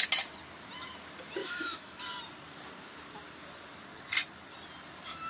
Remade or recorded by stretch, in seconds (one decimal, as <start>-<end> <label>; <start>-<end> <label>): 0.0-1.4 recorded; 1.4-2.0 remade; 2.0-5.3 recorded

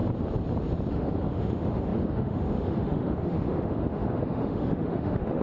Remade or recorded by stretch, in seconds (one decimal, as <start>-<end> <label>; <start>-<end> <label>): 0.0-0.9 recorded; 0.9-5.4 remade

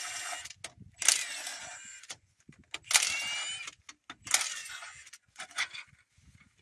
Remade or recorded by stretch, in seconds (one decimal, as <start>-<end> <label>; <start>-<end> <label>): 0.0-1.5 recorded; 1.5-2.4 remade; 2.4-4.6 recorded; 4.6-5.9 remade; 5.9-6.6 recorded

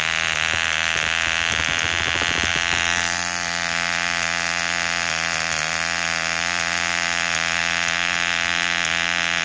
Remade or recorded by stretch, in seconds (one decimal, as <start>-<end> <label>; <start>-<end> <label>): 0.0-9.4 recorded

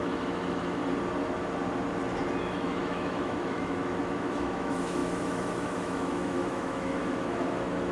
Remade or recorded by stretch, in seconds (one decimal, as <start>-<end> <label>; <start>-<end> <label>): 0.0-0.8 remade; 0.8-2.4 recorded; 2.4-7.9 remade

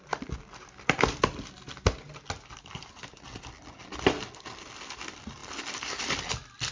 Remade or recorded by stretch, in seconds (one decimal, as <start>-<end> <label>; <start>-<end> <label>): 0.0-6.7 recorded

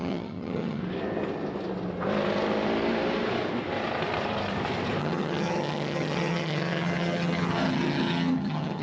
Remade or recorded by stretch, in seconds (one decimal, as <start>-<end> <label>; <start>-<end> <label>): 0.0-0.8 remade; 0.8-5.0 recorded; 5.0-8.8 remade